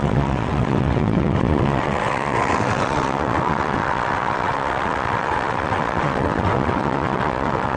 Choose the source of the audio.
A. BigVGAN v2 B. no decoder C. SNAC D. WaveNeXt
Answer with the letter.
D